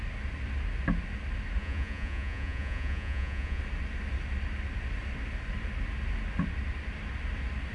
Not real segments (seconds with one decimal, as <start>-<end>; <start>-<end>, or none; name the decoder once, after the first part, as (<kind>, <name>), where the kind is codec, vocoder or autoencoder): 1.6-3.6 (vocoder, Vocos)

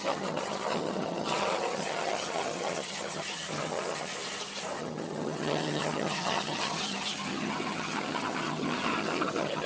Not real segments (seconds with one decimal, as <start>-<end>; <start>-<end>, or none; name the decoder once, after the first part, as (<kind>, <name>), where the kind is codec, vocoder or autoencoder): 0.0-4.1 (vocoder, HiFi-GAN); 4.8-9.7

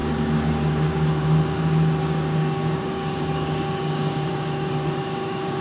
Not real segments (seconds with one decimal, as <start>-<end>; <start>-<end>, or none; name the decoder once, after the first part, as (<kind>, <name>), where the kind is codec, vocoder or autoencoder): 0.0-1.1 (codec, DAC); 2.0-5.6

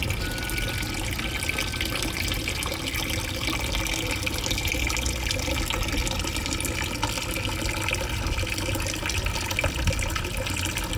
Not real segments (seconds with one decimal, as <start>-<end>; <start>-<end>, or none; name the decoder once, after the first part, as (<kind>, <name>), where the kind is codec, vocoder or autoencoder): none

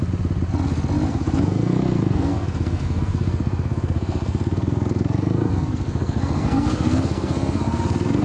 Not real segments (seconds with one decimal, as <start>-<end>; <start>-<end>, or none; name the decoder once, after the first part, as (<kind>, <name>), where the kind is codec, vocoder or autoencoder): 1.1-8.2 (codec, SNAC)

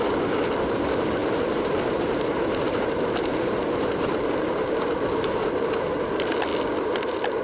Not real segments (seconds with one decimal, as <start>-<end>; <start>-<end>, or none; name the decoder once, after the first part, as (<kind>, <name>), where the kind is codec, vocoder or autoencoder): 1.2-5.6 (vocoder, BigVGAN v2)